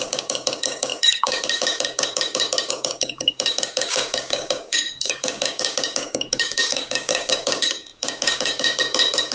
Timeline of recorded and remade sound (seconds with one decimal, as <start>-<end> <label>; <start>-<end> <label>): 0.0-9.3 remade